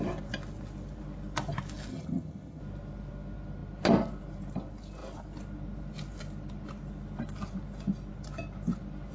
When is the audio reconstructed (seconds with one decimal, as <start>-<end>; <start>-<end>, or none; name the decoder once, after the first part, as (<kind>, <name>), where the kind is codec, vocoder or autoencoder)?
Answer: 1.9-2.6 (vocoder, HiFi-GAN)